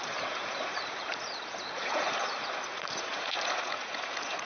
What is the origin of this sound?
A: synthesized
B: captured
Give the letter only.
A